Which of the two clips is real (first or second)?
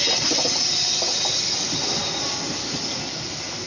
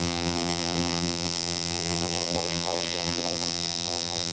first